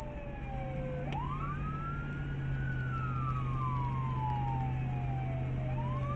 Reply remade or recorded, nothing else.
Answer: recorded